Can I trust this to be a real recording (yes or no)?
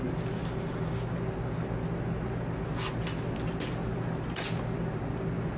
yes